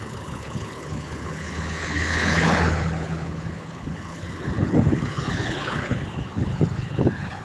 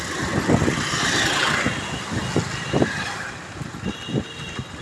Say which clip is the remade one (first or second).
first